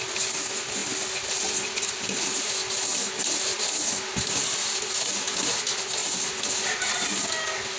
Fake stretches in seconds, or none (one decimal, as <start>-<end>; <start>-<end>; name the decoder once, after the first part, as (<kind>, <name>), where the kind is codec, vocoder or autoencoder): none